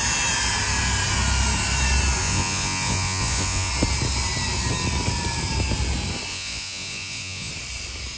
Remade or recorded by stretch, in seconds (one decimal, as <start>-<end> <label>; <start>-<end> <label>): 0.0-2.2 recorded; 2.2-3.7 remade; 3.7-6.3 recorded; 6.3-7.5 remade; 7.5-8.2 recorded